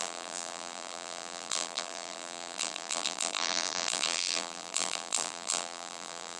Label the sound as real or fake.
fake